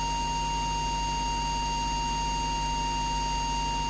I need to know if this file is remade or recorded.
recorded